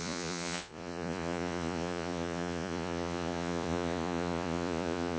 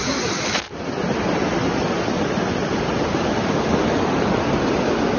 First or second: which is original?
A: second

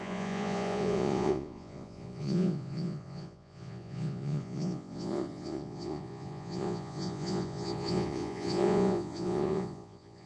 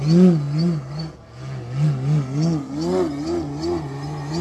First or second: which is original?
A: second